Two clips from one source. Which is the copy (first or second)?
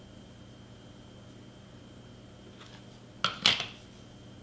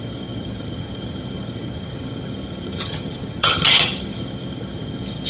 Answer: second